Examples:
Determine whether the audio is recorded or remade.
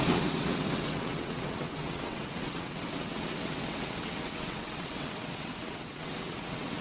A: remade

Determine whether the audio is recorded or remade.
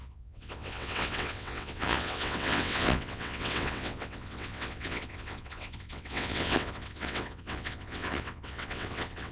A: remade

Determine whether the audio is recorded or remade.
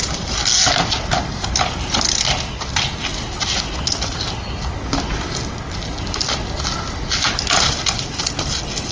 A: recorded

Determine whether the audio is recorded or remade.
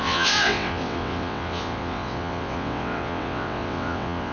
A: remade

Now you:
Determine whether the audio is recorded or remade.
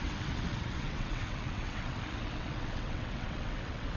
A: remade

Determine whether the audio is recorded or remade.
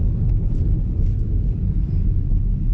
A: recorded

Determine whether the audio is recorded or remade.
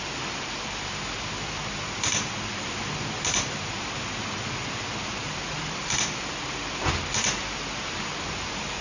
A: recorded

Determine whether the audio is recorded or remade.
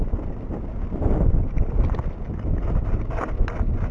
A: recorded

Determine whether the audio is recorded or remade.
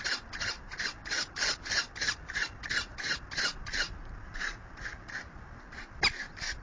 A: recorded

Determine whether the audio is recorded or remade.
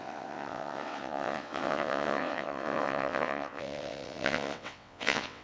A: remade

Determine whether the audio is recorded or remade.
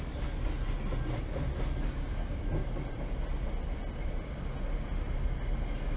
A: recorded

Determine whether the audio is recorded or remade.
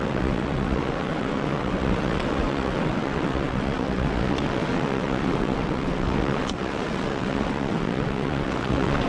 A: remade